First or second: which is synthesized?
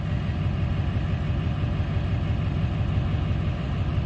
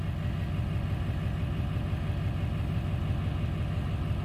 first